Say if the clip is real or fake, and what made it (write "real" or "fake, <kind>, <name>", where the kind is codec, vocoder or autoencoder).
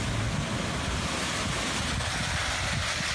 real